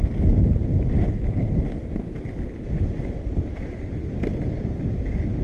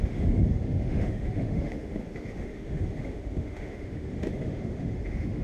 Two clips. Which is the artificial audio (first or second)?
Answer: second